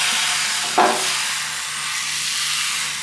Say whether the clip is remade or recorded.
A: recorded